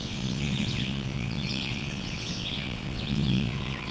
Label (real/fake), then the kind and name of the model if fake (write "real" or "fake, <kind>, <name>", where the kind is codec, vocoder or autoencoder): fake, vocoder, WaveNeXt